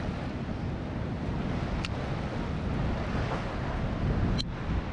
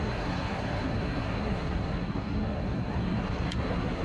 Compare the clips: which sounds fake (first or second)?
second